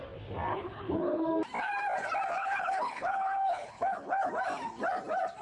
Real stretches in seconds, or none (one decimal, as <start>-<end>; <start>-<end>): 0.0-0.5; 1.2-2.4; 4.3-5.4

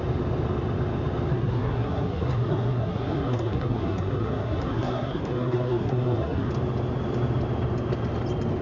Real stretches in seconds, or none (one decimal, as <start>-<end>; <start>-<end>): 0.0-1.3; 6.5-8.6

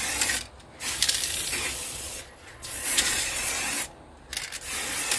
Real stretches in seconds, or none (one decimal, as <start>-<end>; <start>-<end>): 0.0-1.8; 3.5-5.2

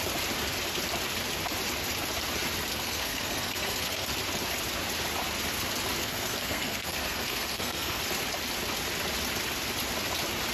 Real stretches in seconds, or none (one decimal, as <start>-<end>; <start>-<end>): 0.0-2.7; 4.1-6.0; 8.0-10.5